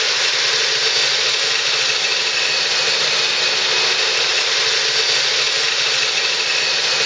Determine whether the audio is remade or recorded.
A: recorded